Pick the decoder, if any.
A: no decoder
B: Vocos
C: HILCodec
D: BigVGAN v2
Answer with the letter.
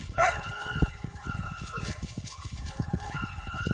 C